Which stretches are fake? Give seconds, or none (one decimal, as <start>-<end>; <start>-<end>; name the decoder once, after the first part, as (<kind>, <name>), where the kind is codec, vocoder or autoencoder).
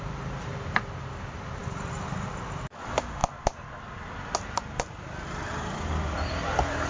none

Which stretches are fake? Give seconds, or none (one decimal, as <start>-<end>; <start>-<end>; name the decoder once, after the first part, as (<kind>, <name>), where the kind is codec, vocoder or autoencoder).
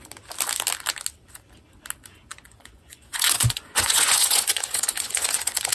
2.3-5.7 (vocoder, Vocos)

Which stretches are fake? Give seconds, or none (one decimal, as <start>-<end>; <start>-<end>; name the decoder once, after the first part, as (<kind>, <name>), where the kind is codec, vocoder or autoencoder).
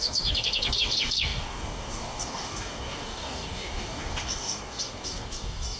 0.0-5.8 (codec, DAC)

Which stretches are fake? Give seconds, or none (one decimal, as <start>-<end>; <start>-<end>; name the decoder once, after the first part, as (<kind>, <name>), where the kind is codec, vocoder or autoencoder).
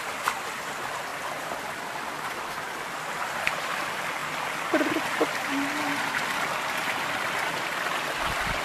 1.1-1.7 (vocoder, BigVGAN v2); 3.2-3.8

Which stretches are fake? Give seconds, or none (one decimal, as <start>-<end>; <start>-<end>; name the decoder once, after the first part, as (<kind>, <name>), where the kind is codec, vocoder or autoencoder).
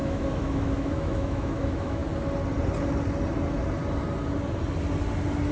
0.0-2.0 (autoencoder, DAC-VAE)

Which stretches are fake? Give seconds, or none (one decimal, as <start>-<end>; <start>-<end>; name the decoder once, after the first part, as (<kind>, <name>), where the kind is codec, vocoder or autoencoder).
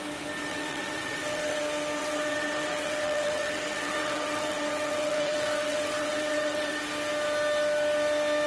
0.5-1.6 (vocoder, WaveNeXt); 2.0-6.8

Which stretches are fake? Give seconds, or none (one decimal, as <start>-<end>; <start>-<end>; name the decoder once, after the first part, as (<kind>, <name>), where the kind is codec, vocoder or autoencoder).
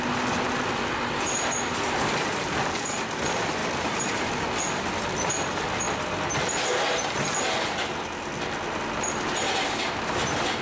none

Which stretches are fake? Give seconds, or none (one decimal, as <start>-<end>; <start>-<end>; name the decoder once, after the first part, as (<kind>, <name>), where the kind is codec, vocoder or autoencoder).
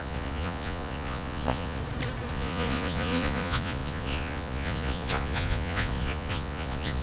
0.0-1.8 (vocoder, Vocos); 2.3-7.0